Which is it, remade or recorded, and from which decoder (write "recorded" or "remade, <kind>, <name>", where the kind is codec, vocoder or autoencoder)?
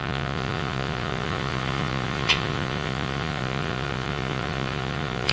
remade, vocoder, Vocos